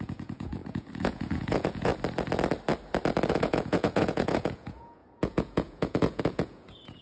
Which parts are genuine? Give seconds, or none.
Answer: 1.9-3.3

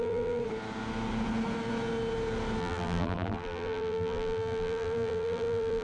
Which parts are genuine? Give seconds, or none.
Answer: 0.4-2.6

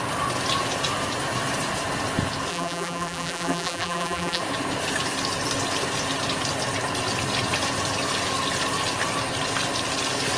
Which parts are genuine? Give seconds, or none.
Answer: 0.0-2.5; 4.4-10.4